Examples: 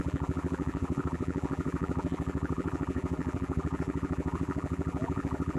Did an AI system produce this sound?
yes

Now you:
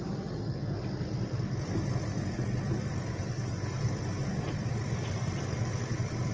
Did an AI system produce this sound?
no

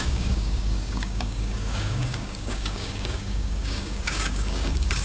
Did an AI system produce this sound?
yes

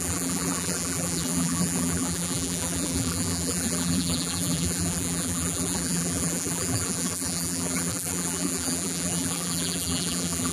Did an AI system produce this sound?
yes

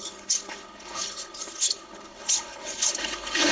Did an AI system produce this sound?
yes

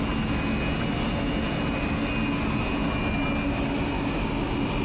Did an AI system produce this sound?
no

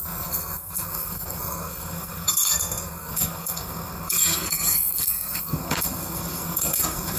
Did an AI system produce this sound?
yes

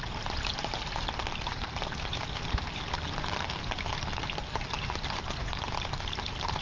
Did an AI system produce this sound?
yes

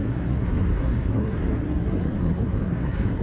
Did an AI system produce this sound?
yes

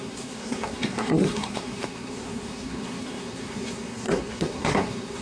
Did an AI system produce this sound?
yes